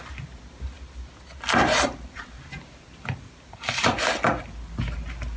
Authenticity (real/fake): real